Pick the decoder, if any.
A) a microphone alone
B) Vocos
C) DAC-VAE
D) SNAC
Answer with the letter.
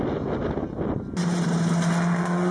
A